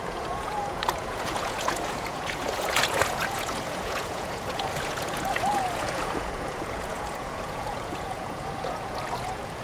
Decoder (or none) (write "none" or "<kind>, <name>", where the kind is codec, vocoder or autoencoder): vocoder, Vocos